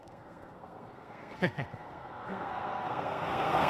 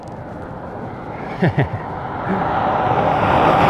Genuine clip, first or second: second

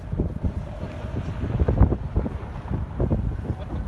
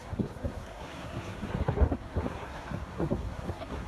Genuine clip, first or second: first